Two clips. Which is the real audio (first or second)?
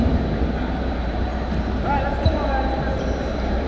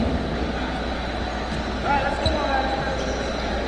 second